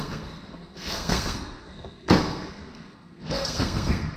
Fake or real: fake